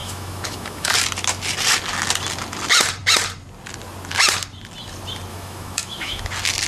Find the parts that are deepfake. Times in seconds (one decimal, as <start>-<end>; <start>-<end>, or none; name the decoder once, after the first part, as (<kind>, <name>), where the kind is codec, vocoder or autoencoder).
0.0-0.9 (autoencoder, DAC-VAE); 5.3-6.2